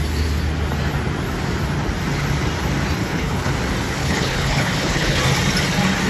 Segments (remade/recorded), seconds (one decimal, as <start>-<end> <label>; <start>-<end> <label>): 0.0-3.0 recorded; 3.0-3.5 remade; 3.5-4.0 recorded; 4.0-5.2 remade; 5.2-6.1 recorded